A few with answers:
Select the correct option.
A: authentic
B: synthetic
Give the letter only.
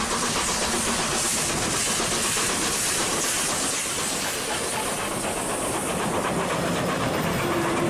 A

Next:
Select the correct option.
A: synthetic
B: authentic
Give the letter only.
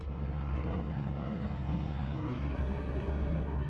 A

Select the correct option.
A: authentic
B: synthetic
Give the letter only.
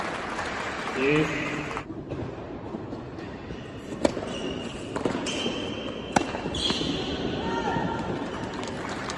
B